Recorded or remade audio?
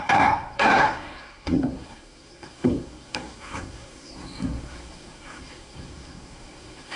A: remade